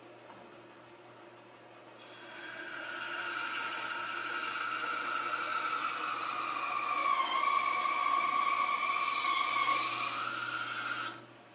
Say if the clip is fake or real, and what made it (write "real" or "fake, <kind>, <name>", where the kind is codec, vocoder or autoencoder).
real